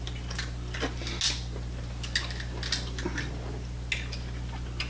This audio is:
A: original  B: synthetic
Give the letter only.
A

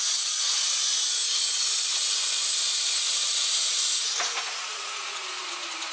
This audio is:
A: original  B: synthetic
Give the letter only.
B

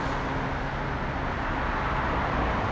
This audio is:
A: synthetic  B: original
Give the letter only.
B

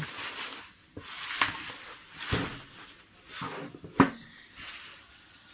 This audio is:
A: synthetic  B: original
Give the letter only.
B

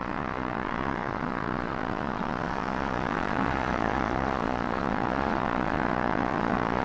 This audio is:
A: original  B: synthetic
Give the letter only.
B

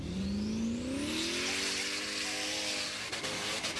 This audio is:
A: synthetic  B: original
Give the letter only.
B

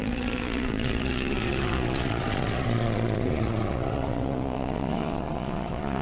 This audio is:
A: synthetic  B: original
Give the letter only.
A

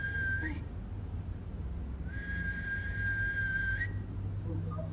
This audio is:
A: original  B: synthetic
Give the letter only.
A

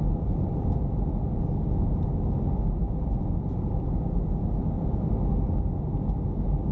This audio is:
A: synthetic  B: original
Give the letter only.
B